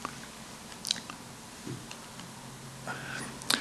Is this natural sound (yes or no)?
yes